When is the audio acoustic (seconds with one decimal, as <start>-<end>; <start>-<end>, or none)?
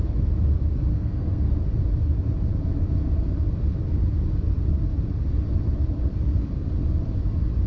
0.0-0.9; 1.5-7.7